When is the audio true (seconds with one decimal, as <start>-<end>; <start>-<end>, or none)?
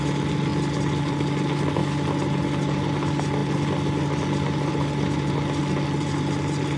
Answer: 0.0-6.8